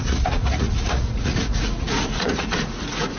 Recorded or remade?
remade